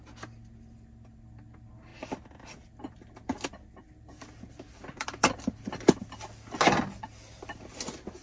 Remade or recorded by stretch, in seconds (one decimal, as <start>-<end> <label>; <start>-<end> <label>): 0.0-1.9 recorded; 1.9-6.0 remade; 6.0-8.2 recorded